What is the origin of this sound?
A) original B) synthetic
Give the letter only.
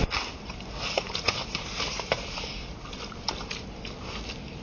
A